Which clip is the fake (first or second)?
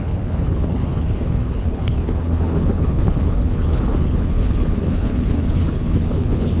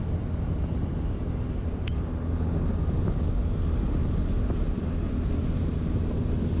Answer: first